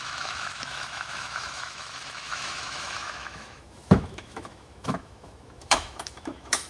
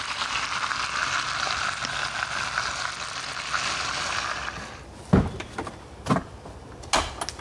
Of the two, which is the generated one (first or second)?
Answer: first